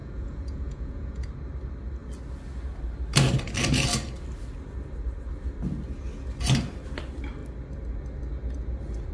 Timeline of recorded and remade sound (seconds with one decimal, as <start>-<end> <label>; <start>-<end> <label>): 0.0-1.3 remade; 1.3-9.1 recorded